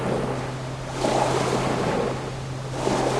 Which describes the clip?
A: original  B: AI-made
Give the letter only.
A